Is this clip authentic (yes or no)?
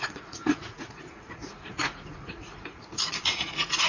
no